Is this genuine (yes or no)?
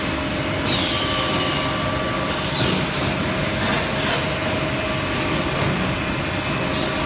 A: yes